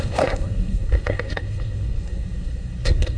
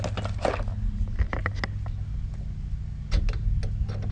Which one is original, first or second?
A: second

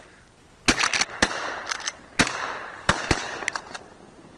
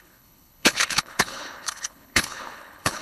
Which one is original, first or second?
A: first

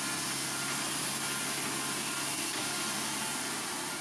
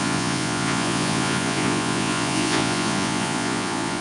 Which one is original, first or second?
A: first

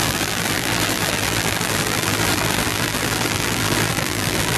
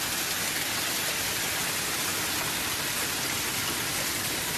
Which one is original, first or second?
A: second